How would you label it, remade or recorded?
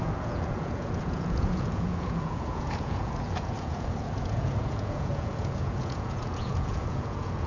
remade